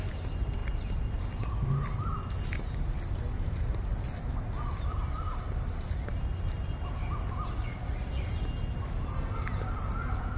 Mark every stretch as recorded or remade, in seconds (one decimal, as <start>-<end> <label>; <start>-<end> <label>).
0.0-10.4 recorded